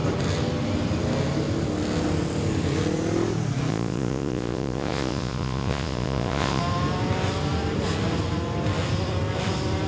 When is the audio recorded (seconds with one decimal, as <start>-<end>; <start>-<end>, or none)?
0.0-3.7; 6.6-9.9